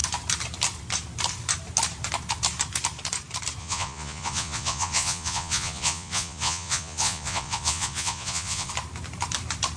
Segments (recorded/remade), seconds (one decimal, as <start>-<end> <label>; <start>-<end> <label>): 0.0-3.6 recorded; 3.6-8.7 remade; 8.7-9.8 recorded